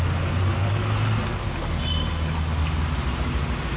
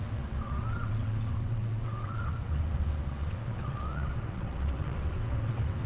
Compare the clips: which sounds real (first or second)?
first